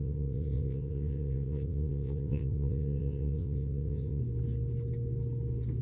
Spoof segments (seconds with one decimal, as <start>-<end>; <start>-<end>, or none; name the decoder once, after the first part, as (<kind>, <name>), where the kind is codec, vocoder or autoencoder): 0.0-4.2 (vocoder, WaveNeXt)